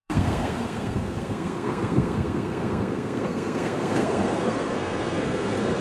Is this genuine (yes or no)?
no